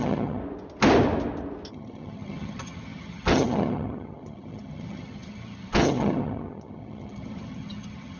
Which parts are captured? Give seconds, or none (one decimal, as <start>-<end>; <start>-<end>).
0.4-1.7